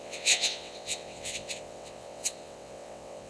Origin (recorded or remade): remade